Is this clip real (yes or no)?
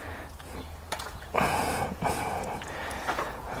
no